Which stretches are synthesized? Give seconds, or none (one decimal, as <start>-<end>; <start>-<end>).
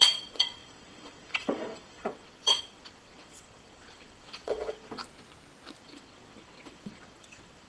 0.0-5.0; 5.8-7.7